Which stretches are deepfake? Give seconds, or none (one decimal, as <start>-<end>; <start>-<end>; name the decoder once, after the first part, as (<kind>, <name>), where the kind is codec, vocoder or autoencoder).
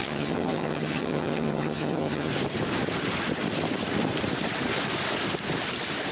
0.0-2.3 (vocoder, HiFi-GAN)